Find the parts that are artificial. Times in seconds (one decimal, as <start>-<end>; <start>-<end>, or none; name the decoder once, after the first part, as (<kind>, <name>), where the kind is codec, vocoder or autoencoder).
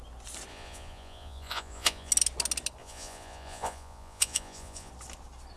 0.5-2.1 (vocoder, Vocos); 2.8-4.9